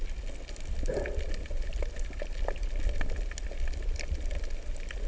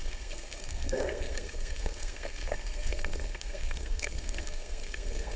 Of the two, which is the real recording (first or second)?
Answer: first